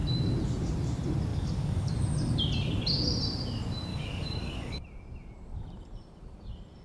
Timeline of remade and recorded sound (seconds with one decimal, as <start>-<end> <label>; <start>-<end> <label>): 0.0-1.3 recorded; 1.3-1.9 remade; 1.9-3.9 recorded; 3.9-4.8 remade; 4.8-6.8 recorded